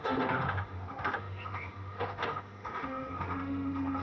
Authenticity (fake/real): fake